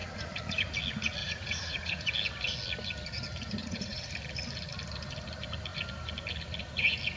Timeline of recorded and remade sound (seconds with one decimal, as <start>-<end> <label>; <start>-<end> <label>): 0.0-0.6 remade; 0.6-1.2 recorded; 1.2-2.1 remade; 2.1-3.6 recorded; 3.6-4.1 remade; 4.1-7.2 recorded

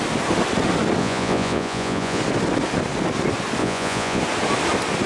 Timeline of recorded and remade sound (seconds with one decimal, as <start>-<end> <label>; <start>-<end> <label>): 0.0-1.0 recorded; 1.0-2.2 remade; 2.2-3.6 recorded; 3.6-4.2 remade; 4.2-5.1 recorded